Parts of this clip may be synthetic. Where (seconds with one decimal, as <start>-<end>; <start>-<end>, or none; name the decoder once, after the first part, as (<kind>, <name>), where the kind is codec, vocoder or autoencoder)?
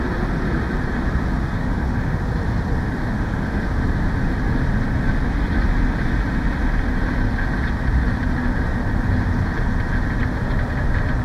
1.5-2.2 (autoencoder, DAC-VAE); 3.0-3.6